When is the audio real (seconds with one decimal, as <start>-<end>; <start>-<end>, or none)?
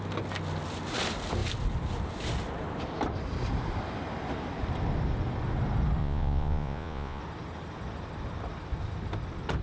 0.0-6.0; 7.2-9.6